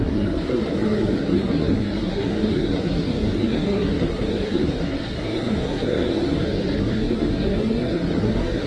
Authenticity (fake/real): fake